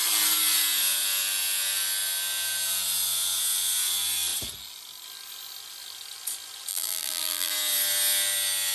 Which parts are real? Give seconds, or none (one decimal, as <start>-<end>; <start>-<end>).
0.0-6.7; 7.5-8.7